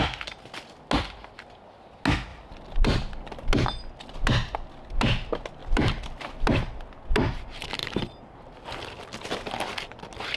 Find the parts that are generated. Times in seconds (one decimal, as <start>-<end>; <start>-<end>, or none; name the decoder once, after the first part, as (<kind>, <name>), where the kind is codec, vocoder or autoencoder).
2.3-3.5 (vocoder, BigVGAN v2); 5.6-6.2; 7.8-9.1